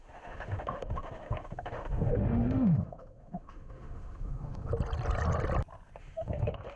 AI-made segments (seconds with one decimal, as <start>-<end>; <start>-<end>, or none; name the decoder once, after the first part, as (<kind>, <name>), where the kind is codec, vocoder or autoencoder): 0.0-4.7 (autoencoder, DAC-VAE); 6.0-6.8